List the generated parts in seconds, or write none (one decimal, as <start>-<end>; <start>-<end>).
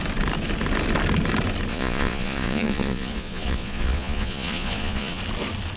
1.7-5.2